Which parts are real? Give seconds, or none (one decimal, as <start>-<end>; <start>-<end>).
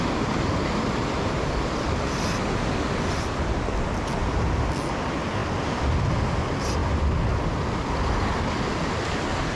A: 0.0-9.6